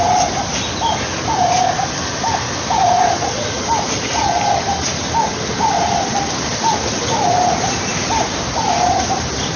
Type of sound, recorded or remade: recorded